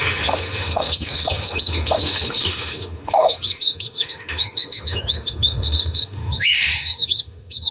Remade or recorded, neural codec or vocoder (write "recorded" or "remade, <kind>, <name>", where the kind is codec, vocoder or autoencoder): remade, autoencoder, DAC-VAE